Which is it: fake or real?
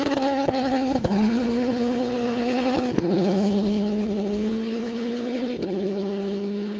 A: fake